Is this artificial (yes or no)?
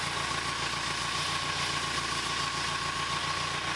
no